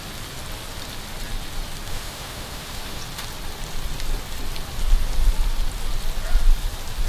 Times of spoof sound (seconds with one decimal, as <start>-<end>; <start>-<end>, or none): 1.9-3.0